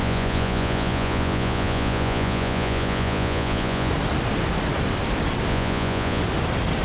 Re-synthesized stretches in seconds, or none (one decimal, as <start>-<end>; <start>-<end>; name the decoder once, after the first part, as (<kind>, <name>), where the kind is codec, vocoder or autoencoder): 0.0-3.9 (vocoder, Vocos); 5.5-6.2